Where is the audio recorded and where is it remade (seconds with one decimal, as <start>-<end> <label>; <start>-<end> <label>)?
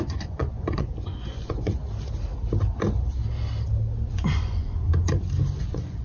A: 0.0-1.8 remade; 1.8-4.1 recorded; 4.1-4.9 remade; 4.9-5.6 recorded; 5.6-6.0 remade